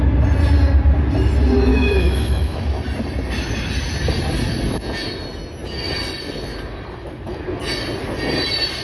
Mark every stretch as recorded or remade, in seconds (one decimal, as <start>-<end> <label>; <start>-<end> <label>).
0.0-1.7 recorded; 1.7-2.8 remade; 2.8-8.8 recorded